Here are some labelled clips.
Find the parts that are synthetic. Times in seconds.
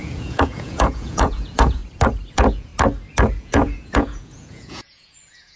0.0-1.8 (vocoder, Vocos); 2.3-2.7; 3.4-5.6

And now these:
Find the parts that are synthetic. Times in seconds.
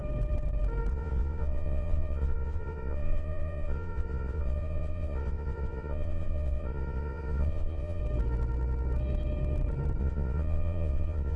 0.9-8.0 (vocoder, Vocos); 10.0-11.4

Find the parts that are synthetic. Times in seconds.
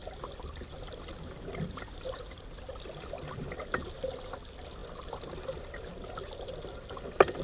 none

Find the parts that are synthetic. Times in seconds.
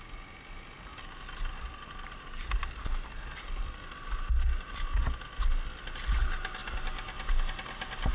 none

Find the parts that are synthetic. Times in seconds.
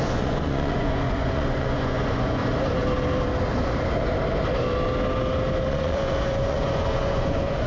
0.0-2.4 (vocoder, Vocos); 5.7-7.7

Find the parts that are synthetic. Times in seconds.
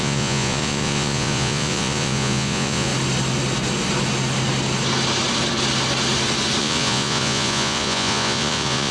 0.0-2.9 (vocoder, Vocos); 6.6-8.9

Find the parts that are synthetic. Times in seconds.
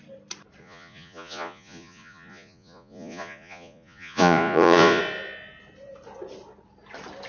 0.6-5.0 (vocoder, Vocos)